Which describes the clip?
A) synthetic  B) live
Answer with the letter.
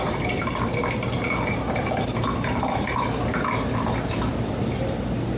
B